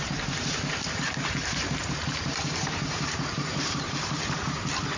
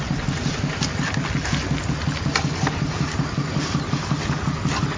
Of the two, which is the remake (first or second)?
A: first